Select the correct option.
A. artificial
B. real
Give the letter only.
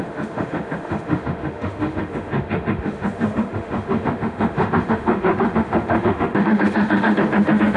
A